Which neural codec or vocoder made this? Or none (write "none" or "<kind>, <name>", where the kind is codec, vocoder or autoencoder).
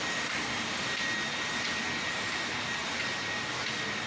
none